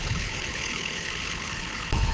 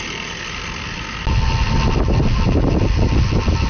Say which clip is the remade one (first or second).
first